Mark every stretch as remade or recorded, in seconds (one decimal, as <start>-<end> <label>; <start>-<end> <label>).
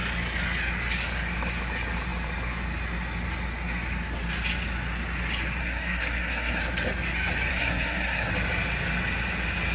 0.0-5.6 recorded; 5.6-6.6 remade; 6.6-7.5 recorded; 7.5-8.3 remade; 8.3-9.7 recorded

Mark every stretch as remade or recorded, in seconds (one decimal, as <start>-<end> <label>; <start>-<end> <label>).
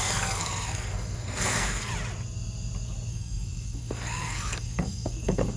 0.0-1.9 remade; 1.9-3.1 recorded; 3.1-5.6 remade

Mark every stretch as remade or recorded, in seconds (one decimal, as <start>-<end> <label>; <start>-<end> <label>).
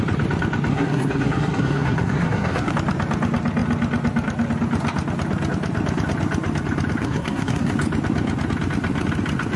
0.0-0.7 recorded; 0.7-2.7 remade; 2.7-7.0 recorded; 7.0-7.7 remade; 7.7-9.6 recorded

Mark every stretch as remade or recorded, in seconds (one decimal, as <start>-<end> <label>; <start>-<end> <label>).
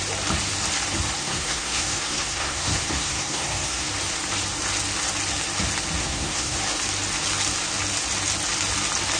0.0-1.2 recorded; 1.2-3.9 remade; 3.9-6.0 recorded; 6.0-6.6 remade; 6.6-9.2 recorded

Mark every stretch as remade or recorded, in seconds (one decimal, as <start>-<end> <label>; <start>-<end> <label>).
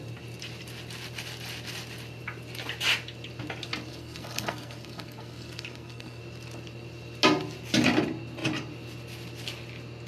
0.0-3.9 recorded; 3.9-6.2 remade; 6.2-10.1 recorded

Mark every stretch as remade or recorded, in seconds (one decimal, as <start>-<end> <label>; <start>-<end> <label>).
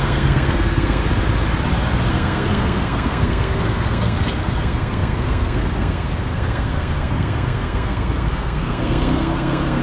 0.0-1.0 remade; 1.0-2.1 recorded; 2.1-9.8 remade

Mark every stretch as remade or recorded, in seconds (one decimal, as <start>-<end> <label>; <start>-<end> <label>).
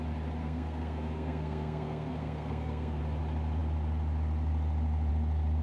0.0-0.4 recorded; 0.4-3.0 remade; 3.0-5.6 recorded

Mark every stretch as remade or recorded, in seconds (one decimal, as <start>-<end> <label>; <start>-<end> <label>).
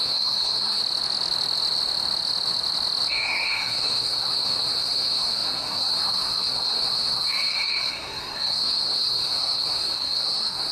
0.0-0.8 remade; 0.8-3.1 recorded; 3.1-10.7 remade